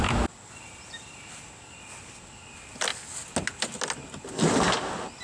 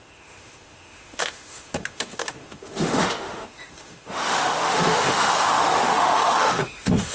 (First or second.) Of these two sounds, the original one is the first